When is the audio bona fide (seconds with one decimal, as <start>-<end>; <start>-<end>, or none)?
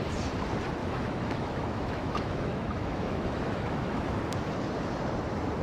0.0-0.8; 4.2-5.6